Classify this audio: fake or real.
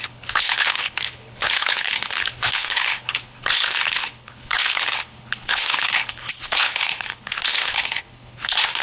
fake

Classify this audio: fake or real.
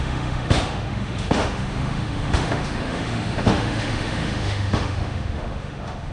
fake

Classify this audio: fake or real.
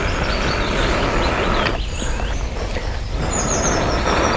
real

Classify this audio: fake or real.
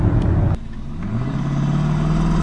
real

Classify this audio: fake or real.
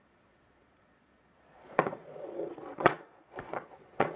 fake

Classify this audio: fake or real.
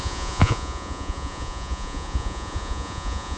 fake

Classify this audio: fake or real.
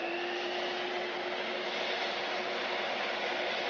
real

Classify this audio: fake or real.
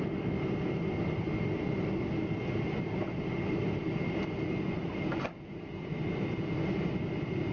real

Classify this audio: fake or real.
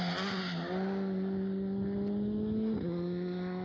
real